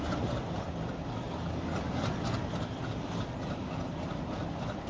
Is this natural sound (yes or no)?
yes